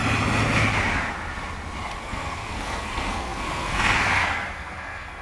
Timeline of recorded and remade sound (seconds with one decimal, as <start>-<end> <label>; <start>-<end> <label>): 0.0-2.0 recorded; 2.0-5.2 remade